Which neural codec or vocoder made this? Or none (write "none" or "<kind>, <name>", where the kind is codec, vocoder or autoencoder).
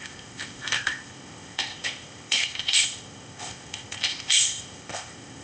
codec, ZipCodec